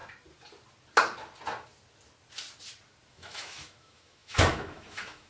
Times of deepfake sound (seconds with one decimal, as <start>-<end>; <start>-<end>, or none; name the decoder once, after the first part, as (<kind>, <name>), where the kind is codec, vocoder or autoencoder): 3.1-5.3 (autoencoder, DAC-VAE)